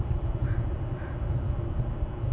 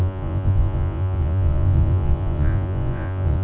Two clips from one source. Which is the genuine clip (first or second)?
first